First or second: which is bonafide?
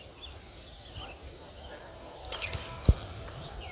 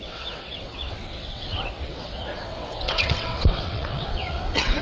first